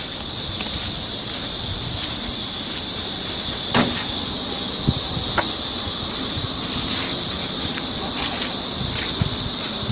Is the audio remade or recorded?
recorded